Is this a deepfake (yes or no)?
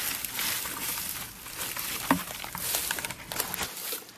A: no